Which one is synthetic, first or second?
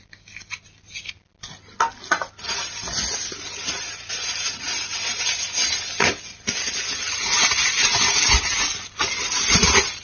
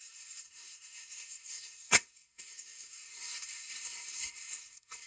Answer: second